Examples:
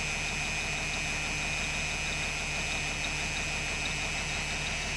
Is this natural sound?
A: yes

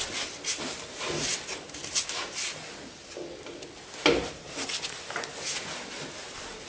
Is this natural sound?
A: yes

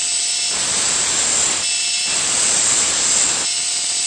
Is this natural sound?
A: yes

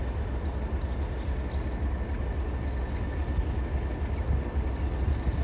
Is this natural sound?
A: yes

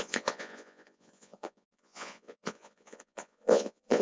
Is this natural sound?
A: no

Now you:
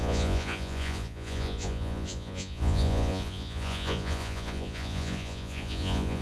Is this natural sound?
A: no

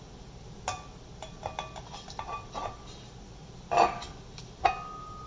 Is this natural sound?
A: yes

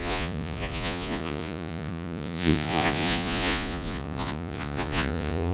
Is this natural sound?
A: no